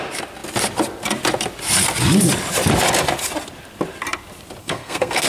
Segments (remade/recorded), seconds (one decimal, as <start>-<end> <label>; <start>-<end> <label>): 0.0-4.6 recorded; 4.6-5.3 remade